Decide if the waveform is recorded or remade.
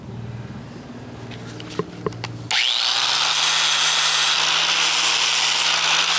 recorded